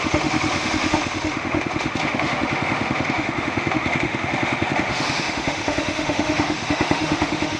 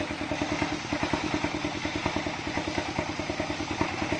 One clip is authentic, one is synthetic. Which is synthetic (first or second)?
first